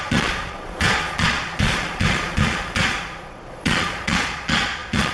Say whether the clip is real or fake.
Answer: fake